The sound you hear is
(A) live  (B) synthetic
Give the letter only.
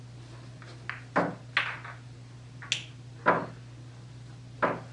A